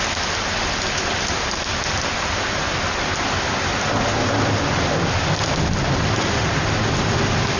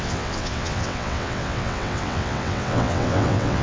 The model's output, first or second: second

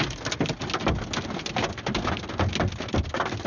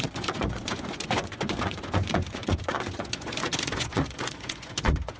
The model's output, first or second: second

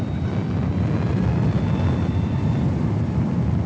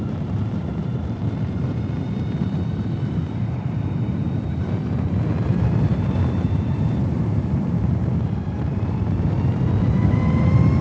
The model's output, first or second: second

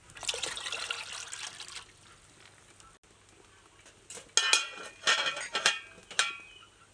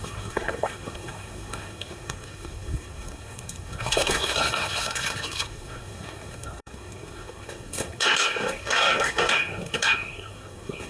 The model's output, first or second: second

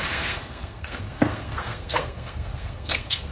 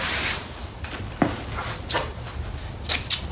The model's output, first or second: first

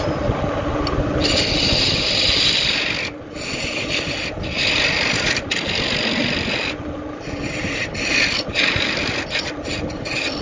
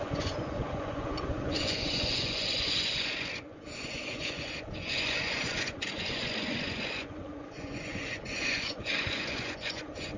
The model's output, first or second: second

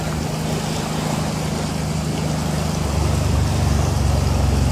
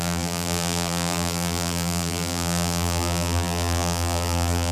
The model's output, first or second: second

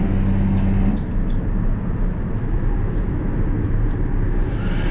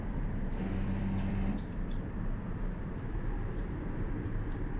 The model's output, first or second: second